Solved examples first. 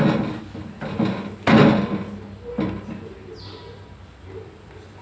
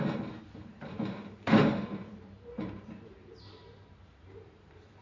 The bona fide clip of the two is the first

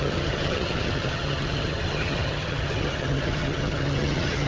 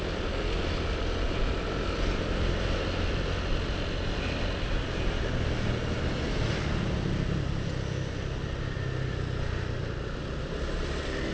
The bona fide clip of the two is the second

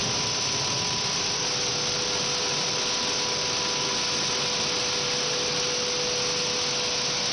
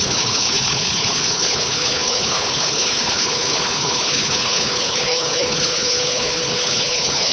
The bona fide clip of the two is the first